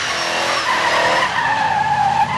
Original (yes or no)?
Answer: yes